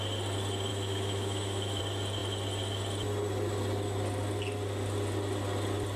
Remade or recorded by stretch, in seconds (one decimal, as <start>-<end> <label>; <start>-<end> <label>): 0.0-0.7 recorded; 0.7-1.8 remade; 1.8-6.0 recorded

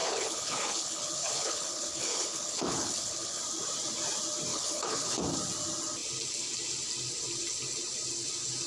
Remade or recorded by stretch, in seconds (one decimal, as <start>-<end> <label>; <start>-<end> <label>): 0.0-3.4 remade; 3.4-4.5 recorded; 4.5-5.2 remade; 5.2-8.7 recorded

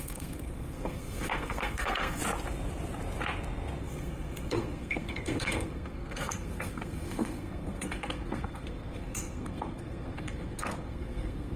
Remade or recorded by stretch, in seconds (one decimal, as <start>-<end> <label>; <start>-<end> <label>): 0.0-2.2 remade; 2.2-3.8 recorded; 3.8-11.6 remade

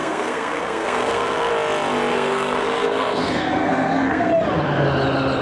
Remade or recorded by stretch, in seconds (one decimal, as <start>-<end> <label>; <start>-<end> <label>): 0.0-1.5 remade; 1.5-2.1 recorded; 2.1-4.3 remade; 4.3-5.4 recorded

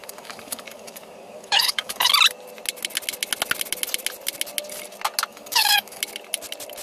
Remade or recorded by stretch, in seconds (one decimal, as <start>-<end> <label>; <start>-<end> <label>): 0.0-2.1 remade; 2.1-5.3 recorded; 5.3-6.0 remade; 6.0-6.8 recorded

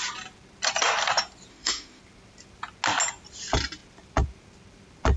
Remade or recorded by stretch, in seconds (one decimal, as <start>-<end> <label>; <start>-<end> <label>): 0.0-1.5 recorded; 1.5-2.0 remade; 2.0-5.2 recorded

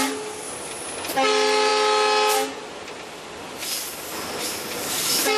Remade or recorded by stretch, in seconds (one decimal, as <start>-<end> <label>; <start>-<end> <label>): 0.0-5.4 recorded